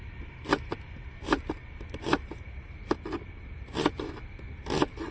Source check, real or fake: real